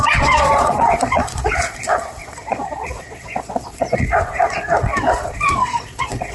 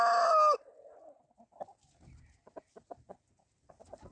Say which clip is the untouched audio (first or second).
second